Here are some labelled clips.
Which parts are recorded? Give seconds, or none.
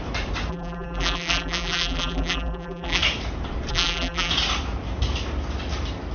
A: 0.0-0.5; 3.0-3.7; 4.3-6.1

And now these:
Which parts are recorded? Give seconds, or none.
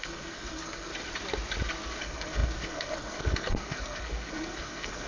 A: 0.9-2.0